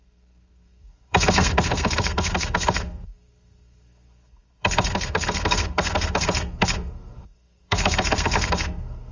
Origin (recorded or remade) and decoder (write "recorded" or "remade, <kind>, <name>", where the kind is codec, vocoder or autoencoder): remade, codec, SNAC